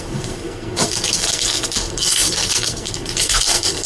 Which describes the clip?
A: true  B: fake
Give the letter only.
B